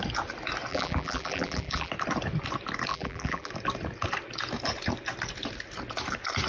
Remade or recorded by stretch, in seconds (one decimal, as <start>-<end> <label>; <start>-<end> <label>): 0.0-0.7 recorded; 0.7-1.9 remade; 1.9-2.9 recorded; 2.9-3.5 remade; 3.5-6.5 recorded